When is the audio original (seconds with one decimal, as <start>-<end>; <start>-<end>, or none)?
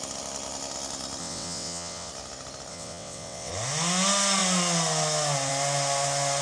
0.0-1.2; 2.1-2.7; 3.5-6.4